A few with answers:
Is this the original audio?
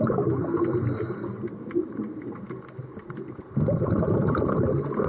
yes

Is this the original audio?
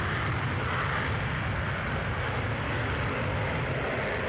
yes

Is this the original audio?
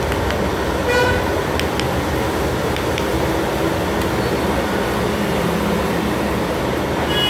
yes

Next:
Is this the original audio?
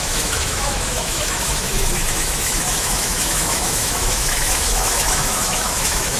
no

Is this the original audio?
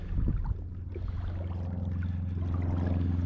yes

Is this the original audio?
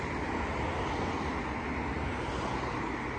yes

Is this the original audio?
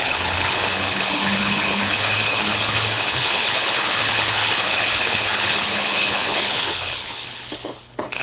no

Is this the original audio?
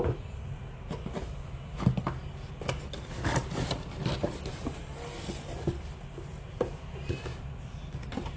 yes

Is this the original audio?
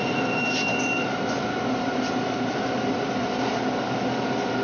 no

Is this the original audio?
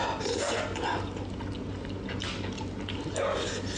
yes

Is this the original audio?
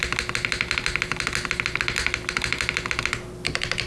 yes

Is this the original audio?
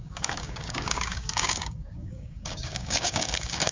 no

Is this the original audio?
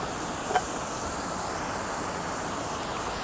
yes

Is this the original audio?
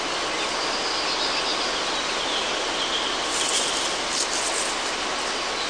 yes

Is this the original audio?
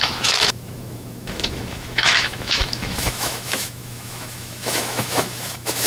no